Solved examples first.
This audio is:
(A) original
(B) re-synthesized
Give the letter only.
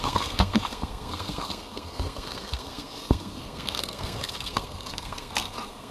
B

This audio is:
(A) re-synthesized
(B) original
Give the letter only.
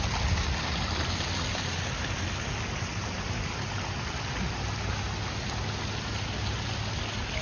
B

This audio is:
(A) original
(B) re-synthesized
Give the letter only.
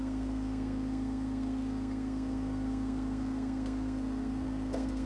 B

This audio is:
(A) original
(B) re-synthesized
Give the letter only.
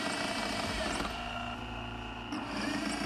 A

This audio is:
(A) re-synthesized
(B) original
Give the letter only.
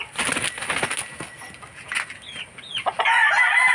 B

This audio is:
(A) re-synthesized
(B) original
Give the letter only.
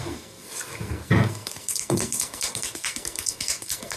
A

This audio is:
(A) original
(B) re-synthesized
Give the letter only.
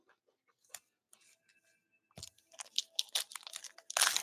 A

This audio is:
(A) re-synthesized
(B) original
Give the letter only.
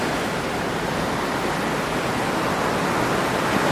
B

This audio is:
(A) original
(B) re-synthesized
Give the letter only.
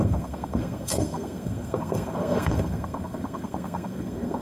B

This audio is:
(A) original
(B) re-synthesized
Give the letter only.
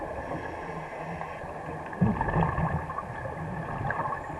A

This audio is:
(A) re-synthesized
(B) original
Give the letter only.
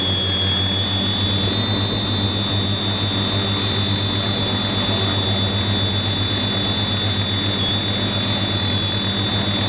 B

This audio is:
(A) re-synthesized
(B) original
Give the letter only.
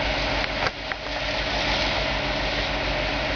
B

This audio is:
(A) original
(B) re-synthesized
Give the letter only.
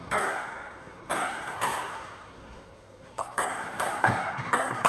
B